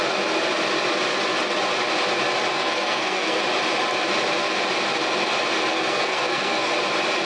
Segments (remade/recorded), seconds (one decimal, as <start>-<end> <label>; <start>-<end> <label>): 0.0-2.5 recorded; 2.5-3.4 remade; 3.4-5.7 recorded; 5.7-6.7 remade; 6.7-7.2 recorded